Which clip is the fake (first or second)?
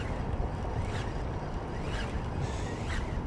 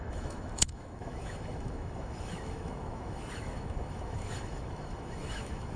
second